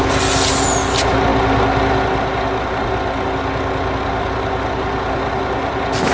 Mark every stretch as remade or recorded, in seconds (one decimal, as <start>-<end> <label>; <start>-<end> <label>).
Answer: 0.0-6.1 recorded